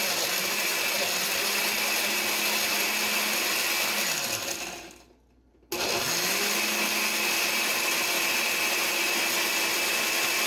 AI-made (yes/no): no